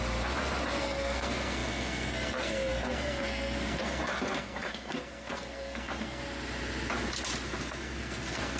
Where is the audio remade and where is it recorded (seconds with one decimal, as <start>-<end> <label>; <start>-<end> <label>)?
0.0-0.8 recorded; 0.8-6.2 remade; 6.2-7.6 recorded; 7.6-8.6 remade